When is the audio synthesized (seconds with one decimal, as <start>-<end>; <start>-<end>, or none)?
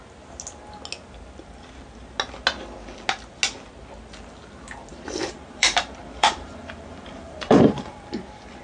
4.9-8.1